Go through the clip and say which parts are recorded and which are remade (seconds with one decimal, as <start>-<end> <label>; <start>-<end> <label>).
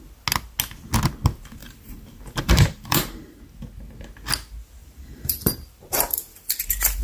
0.0-1.6 recorded; 1.6-3.4 remade; 3.4-4.8 recorded; 4.8-7.0 remade